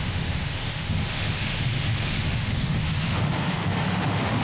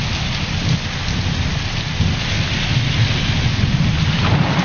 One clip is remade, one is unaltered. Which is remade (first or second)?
first